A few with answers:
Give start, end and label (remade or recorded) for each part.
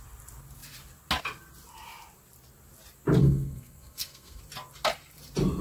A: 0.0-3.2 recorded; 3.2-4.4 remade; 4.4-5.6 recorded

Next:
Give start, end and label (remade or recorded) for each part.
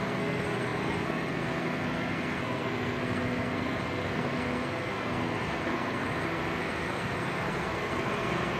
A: 0.0-8.6 remade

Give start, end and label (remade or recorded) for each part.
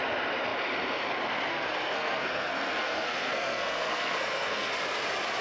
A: 0.0-1.5 recorded; 1.5-4.7 remade; 4.7-5.4 recorded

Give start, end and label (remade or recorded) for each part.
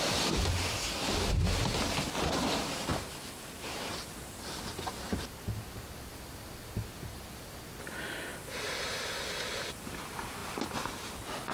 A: 0.0-11.5 recorded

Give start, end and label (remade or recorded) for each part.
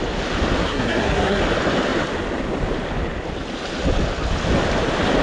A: 0.0-0.6 recorded; 0.6-1.4 remade; 1.4-5.2 recorded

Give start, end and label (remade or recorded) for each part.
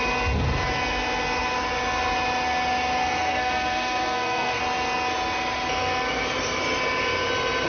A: 0.0-3.2 recorded; 3.2-4.6 remade; 4.6-7.7 recorded